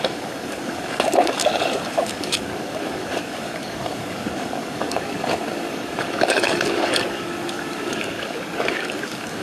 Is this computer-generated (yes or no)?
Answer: yes